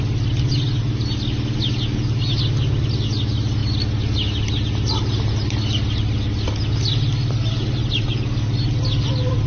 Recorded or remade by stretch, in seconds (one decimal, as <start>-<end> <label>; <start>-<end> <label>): 0.0-9.5 recorded